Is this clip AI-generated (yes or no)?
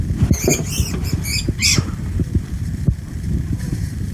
yes